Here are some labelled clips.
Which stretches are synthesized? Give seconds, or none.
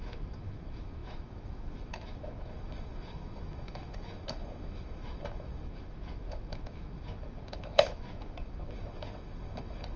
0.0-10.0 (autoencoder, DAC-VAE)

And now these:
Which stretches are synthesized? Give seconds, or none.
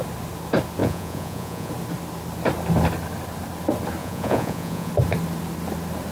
0.8-1.7 (vocoder, Vocos); 4.0-4.9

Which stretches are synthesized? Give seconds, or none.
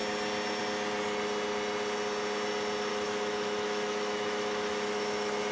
2.9-5.5 (autoencoder, DAC-VAE)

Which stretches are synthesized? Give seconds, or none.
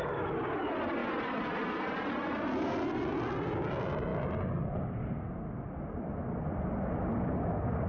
none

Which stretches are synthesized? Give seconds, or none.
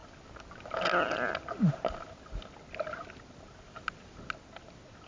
none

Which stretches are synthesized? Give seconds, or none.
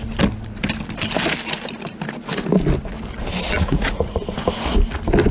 3.6-4.2 (vocoder, Vocos)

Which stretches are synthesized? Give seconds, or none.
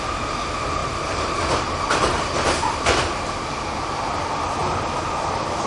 0.8-3.0 (vocoder, BigVGAN v2)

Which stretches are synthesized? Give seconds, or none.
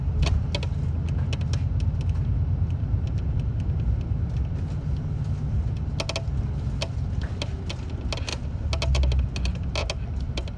none